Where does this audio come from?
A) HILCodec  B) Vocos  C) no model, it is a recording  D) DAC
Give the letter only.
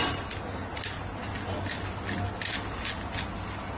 C